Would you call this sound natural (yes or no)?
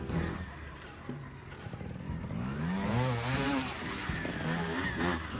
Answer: no